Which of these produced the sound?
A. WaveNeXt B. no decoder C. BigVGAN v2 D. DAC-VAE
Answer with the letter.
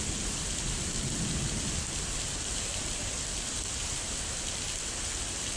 B